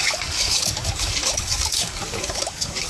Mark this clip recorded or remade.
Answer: remade